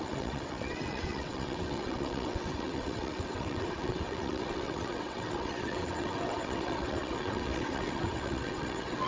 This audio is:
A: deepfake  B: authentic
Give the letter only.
A